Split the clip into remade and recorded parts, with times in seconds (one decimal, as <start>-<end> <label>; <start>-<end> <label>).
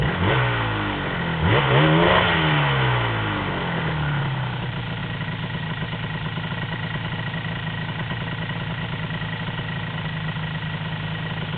0.0-11.6 recorded